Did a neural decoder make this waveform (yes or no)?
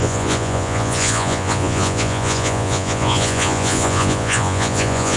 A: yes